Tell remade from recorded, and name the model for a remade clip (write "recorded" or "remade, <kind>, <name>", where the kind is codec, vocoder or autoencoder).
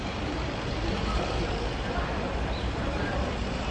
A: remade, vocoder, BigVGAN v2